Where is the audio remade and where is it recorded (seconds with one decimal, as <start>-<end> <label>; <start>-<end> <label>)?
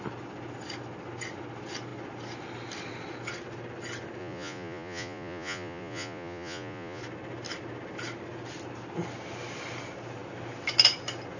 0.0-4.2 recorded; 4.2-7.0 remade; 7.0-11.4 recorded